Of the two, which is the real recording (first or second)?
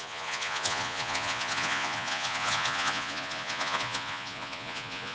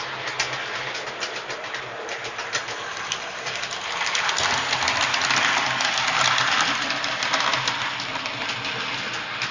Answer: second